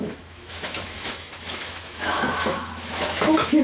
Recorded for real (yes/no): no